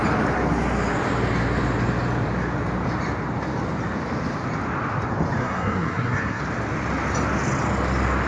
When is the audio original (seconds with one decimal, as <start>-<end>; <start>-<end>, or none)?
0.0-5.4; 6.4-8.3